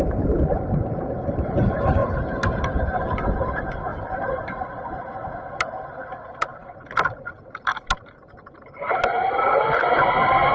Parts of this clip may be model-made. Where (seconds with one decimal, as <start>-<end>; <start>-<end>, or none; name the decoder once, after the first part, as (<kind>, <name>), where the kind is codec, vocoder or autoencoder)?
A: none